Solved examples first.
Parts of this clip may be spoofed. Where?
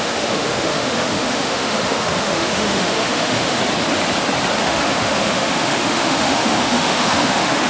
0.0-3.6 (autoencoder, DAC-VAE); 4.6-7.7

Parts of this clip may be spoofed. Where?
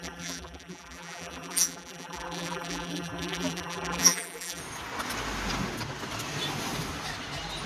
0.0-4.6 (vocoder, BigVGAN v2)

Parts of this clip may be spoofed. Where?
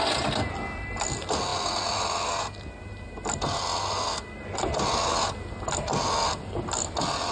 none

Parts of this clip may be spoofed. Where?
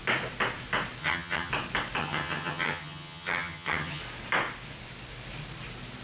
1.0-1.5 (vocoder, HiFi-GAN); 2.0-4.0